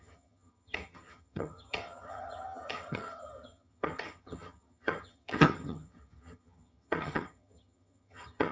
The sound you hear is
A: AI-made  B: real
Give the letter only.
A